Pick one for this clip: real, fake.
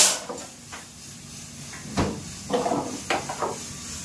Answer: real